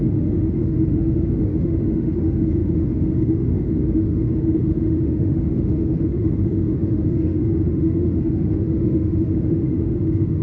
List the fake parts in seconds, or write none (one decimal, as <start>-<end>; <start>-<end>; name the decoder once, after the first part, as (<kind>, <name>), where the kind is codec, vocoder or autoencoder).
0.0-10.4 (autoencoder, DAC-VAE)